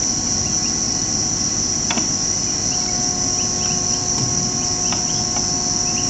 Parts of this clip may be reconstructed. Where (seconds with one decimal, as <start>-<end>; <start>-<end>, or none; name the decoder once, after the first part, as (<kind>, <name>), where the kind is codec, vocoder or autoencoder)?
none